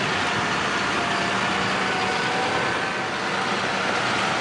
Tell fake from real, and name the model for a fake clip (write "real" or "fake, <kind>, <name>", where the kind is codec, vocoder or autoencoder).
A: real